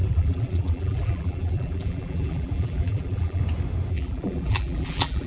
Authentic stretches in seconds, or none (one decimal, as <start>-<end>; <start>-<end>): 3.4-3.9